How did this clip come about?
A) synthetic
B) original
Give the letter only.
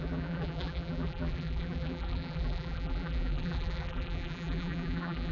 A